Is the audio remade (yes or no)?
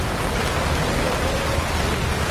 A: no